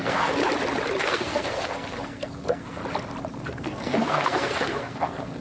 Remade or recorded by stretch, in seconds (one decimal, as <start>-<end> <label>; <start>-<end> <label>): 0.0-0.4 remade; 0.4-1.0 recorded; 1.0-2.8 remade; 2.8-3.3 recorded; 3.3-5.4 remade